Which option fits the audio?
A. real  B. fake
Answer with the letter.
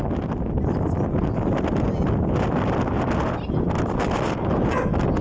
A